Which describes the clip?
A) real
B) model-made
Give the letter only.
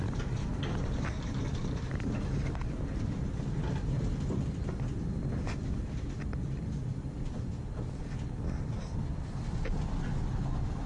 A